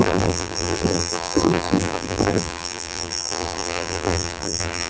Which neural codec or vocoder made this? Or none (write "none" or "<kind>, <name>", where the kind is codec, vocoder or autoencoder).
vocoder, BigVGAN v2